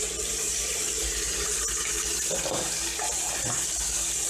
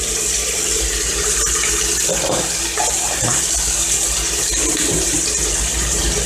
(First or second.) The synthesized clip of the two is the second